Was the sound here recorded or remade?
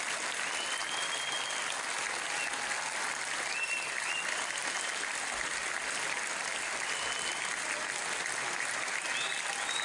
recorded